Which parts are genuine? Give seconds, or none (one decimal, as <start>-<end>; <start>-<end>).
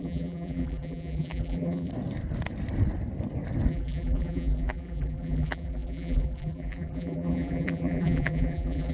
1.9-3.7